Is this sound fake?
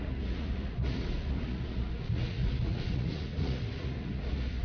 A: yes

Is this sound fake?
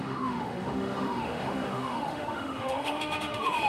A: yes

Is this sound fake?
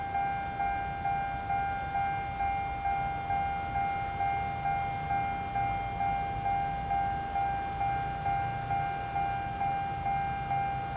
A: no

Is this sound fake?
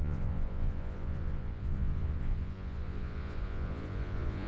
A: yes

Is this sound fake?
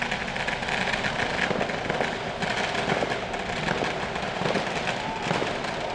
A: no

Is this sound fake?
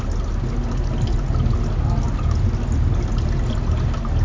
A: no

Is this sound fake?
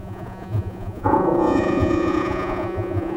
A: yes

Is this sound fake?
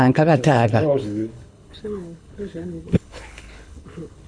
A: yes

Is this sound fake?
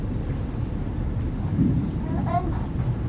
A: no